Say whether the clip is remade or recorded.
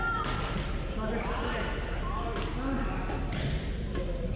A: recorded